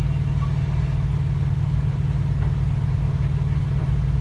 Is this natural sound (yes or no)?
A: yes